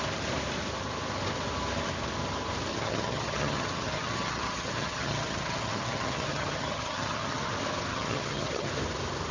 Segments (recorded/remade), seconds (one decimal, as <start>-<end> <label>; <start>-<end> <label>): 0.0-2.7 recorded; 2.7-7.5 remade; 7.5-7.9 recorded; 7.9-8.7 remade; 8.7-9.3 recorded